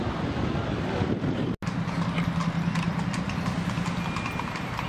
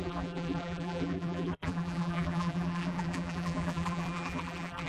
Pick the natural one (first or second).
first